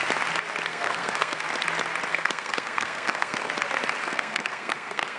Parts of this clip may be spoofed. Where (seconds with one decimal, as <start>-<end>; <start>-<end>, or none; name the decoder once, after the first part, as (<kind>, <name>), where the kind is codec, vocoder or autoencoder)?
0.7-1.4 (codec, SNAC); 2.1-3.5; 4.0-5.2